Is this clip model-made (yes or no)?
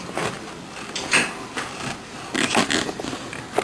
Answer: no